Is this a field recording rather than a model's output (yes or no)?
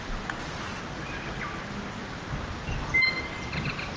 yes